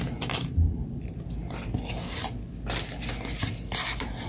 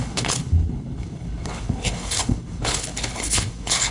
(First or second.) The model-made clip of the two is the second